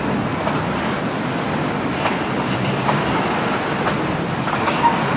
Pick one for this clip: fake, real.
real